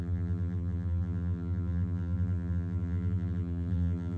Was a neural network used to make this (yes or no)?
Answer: yes